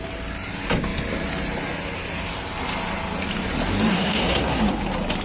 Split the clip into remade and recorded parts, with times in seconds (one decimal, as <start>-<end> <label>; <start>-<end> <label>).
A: 0.0-3.9 recorded; 3.9-4.6 remade; 4.6-5.2 recorded